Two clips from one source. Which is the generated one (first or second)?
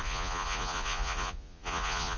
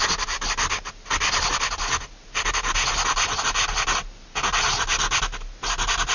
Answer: first